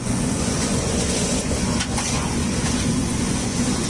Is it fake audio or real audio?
fake